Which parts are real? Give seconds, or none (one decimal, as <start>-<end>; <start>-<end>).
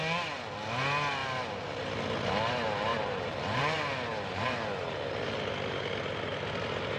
0.0-2.9; 3.6-7.0